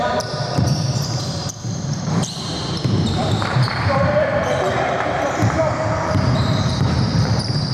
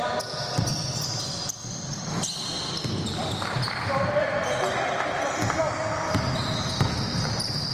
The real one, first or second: second